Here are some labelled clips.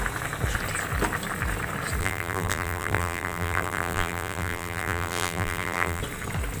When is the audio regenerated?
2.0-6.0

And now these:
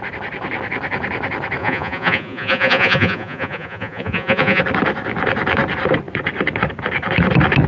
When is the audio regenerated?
1.6-4.6

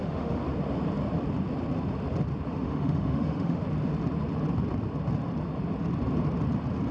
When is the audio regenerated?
0.0-0.4; 2.5-3.6

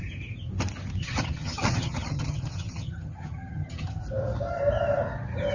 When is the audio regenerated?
1.0-4.0

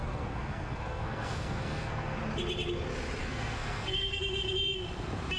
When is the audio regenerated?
0.0-2.2; 3.2-4.2

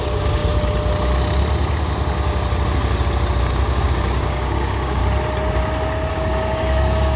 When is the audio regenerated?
0.0-0.4; 3.4-5.0; 6.1-7.2

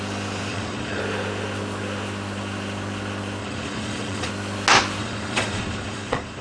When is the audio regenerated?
0.5-1.0; 3.4-4.3; 5.0-6.4

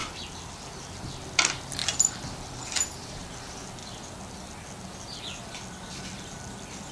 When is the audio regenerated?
none